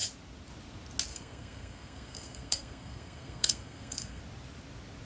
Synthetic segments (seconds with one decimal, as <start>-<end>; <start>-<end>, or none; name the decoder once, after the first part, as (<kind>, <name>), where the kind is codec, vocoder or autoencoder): 1.1-4.2 (codec, SNAC)